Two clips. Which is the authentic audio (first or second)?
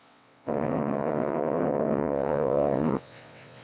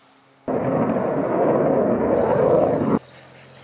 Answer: second